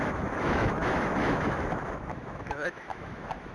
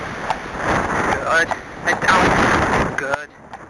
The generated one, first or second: first